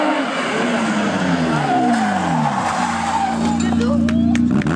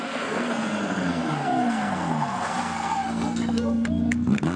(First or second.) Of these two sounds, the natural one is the first